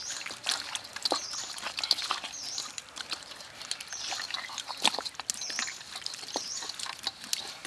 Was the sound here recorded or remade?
recorded